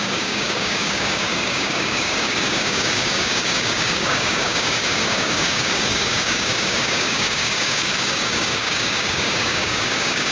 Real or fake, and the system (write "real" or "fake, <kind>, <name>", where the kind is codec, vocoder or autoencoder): fake, codec, DAC